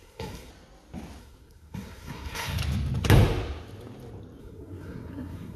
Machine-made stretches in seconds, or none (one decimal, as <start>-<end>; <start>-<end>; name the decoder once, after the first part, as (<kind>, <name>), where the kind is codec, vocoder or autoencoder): 0.0-0.5 (codec, SNAC); 1.2-2.6; 4.4-5.6